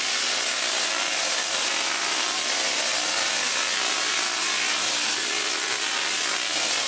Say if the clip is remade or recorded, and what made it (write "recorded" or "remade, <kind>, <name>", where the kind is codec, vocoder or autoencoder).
recorded